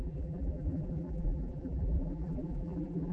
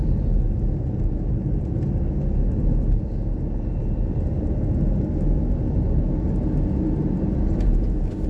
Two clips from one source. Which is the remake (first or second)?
first